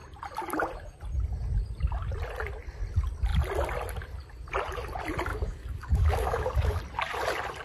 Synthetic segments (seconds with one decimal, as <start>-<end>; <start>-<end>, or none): 5.3-6.8

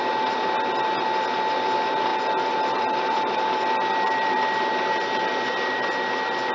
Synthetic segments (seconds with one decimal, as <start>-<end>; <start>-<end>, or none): 0.0-0.6; 2.1-5.3